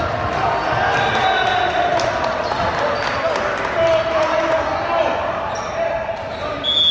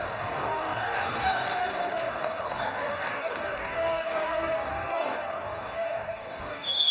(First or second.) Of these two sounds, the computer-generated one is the second